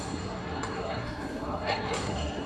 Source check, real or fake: fake